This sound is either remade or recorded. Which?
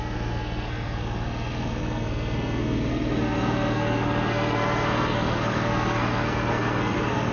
remade